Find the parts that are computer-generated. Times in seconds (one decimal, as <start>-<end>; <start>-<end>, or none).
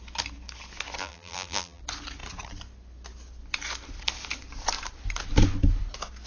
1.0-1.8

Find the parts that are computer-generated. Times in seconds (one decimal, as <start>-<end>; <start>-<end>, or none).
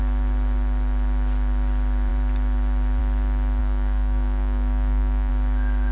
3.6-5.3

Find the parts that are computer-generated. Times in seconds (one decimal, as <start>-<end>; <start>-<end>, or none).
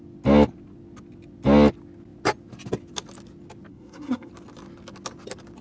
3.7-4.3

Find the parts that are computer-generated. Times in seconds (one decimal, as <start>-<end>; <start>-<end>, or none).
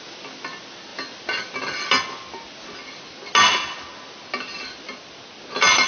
none